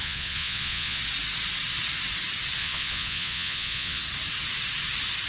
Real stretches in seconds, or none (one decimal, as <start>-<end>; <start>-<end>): 1.0-2.6; 4.0-5.3